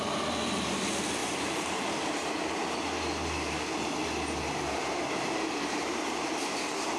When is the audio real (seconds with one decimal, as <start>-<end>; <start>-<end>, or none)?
0.0-1.2; 2.0-7.0

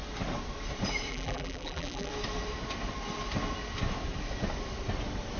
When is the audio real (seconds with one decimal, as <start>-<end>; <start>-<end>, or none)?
0.0-1.1; 2.1-5.4

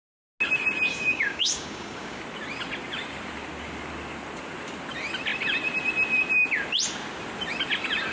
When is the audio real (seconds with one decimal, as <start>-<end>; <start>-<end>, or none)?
0.0-0.9; 2.2-8.1

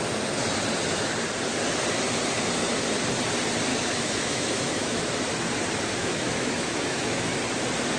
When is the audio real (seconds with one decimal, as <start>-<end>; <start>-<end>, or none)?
0.0-3.7; 5.1-6.0; 7.3-8.0

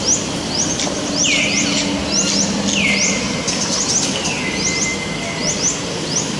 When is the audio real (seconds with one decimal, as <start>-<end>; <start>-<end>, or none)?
0.0-6.4

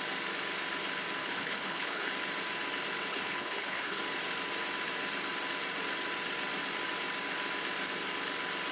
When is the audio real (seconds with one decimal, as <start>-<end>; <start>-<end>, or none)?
0.0-1.2; 2.1-3.1; 4.0-8.7

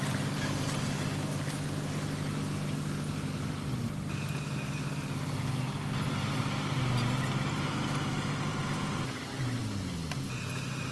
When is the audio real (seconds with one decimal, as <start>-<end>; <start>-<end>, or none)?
0.0-8.5; 9.6-10.9

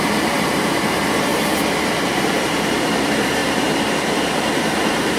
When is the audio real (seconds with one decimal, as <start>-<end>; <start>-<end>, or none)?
1.3-2.2